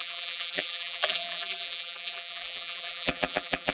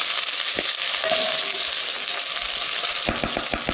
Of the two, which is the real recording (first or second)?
second